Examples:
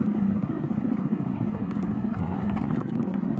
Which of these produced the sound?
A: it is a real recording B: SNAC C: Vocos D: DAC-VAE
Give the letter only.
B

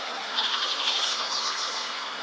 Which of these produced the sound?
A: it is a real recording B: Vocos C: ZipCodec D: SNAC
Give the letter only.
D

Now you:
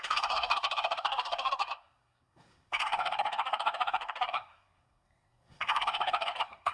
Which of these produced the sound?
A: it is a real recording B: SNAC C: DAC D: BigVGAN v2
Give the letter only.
B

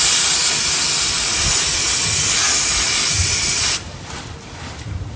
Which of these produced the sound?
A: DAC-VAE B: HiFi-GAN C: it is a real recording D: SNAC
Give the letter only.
C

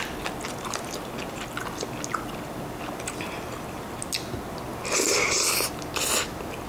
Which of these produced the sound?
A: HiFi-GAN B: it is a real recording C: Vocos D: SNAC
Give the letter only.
B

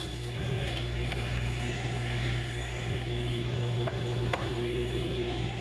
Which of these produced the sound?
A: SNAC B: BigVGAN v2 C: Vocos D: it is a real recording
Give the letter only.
A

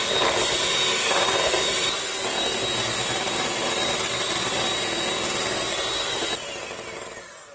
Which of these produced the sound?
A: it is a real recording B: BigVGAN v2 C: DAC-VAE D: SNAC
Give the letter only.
A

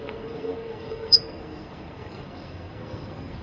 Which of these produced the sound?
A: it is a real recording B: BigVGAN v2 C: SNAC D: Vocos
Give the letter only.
C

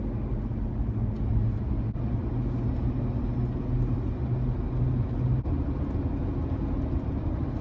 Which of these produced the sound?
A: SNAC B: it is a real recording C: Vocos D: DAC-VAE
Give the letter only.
B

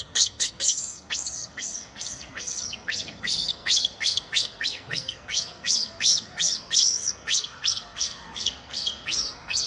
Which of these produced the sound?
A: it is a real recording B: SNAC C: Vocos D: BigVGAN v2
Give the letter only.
B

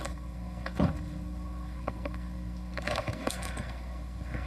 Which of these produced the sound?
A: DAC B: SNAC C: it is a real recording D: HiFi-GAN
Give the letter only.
B